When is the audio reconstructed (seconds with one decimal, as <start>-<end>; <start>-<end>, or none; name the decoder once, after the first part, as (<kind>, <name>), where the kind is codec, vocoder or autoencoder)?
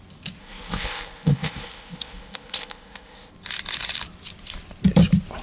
0.4-3.3 (codec, ZipCodec)